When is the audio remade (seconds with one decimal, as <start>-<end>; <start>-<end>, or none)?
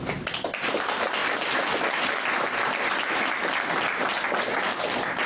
none